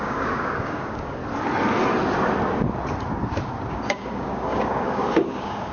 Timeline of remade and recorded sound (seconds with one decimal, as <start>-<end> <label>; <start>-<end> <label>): 0.0-1.2 remade; 1.2-3.7 recorded; 3.7-5.7 remade